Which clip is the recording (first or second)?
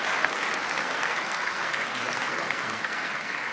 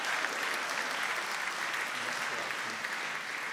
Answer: second